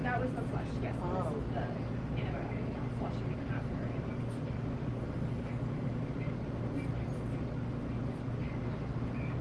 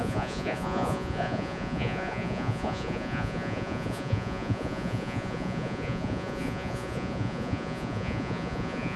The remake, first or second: second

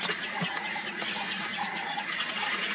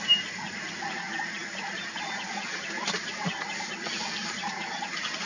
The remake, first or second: first